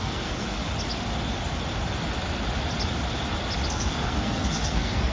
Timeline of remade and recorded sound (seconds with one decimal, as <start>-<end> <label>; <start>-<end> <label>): 0.0-0.6 remade; 0.6-3.7 recorded; 3.7-5.1 remade